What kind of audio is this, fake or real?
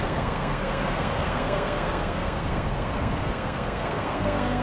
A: fake